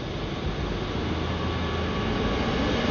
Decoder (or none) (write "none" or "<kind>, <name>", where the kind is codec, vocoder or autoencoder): none